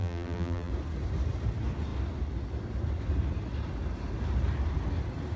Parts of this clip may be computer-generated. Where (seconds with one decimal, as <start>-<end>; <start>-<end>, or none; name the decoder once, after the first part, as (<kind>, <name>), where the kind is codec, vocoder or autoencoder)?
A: 0.0-0.7 (vocoder, BigVGAN v2)